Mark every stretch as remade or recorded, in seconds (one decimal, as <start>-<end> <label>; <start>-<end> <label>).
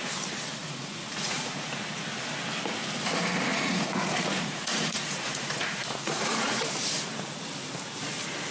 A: 0.0-0.6 recorded; 0.6-1.8 remade; 1.8-3.5 recorded; 3.5-6.6 remade; 6.6-8.5 recorded